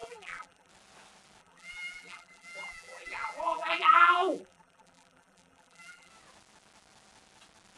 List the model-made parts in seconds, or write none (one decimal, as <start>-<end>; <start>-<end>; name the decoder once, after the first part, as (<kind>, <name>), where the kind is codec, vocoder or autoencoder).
0.0-0.7 (vocoder, BigVGAN v2); 1.4-6.1